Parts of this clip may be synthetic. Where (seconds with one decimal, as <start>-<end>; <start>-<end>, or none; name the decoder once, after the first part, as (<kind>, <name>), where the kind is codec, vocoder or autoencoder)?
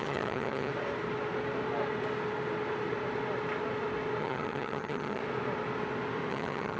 0.0-0.7 (vocoder, HiFi-GAN); 4.2-5.2; 6.3-6.8